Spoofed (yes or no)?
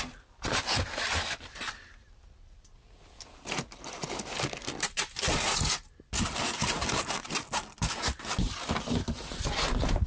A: no